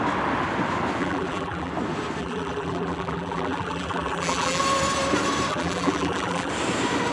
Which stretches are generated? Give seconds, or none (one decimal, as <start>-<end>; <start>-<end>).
1.0-1.7; 2.2-4.6; 5.5-6.5